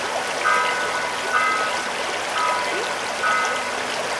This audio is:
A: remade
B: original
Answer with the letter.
B